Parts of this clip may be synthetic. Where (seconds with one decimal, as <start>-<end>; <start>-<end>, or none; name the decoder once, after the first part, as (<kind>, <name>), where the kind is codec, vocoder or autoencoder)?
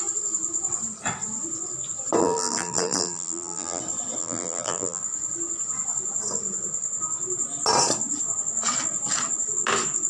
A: 2.2-3.8 (vocoder, BigVGAN v2); 4.2-5.0